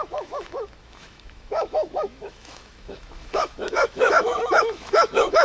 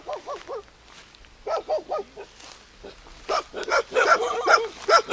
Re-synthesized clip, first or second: first